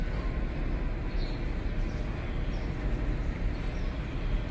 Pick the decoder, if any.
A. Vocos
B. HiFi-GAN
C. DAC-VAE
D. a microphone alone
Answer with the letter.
D